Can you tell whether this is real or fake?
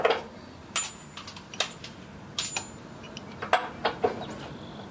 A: real